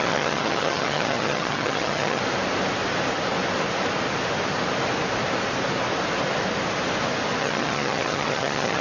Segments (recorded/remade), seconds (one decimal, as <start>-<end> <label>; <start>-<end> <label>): 0.0-2.2 remade; 2.2-7.4 recorded; 7.4-8.8 remade